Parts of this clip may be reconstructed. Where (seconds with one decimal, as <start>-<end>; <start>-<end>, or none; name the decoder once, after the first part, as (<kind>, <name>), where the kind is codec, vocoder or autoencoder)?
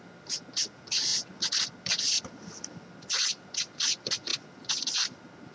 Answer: none